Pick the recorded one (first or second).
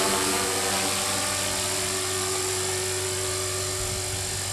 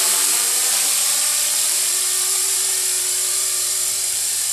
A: first